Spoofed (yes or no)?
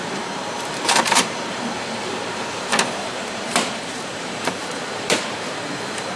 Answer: yes